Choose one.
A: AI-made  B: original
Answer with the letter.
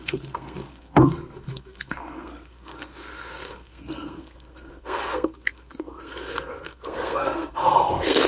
A